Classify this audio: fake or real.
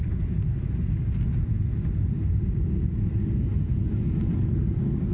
real